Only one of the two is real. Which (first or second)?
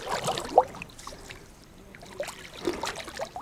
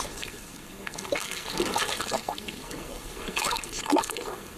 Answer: first